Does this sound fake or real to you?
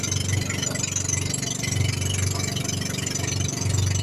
real